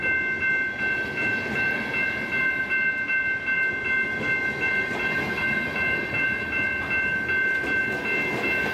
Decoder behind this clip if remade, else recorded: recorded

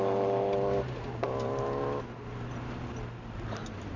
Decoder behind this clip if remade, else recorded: recorded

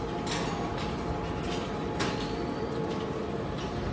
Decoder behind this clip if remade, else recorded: recorded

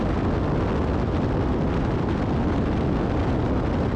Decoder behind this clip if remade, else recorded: recorded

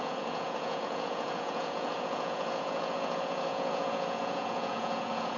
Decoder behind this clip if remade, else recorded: remade, vocoder, Vocos